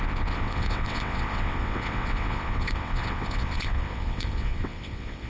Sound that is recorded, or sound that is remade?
remade